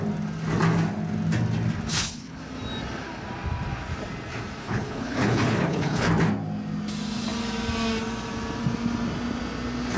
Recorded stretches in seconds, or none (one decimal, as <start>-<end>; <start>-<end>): 0.0-1.9; 2.4-4.6; 6.1-10.0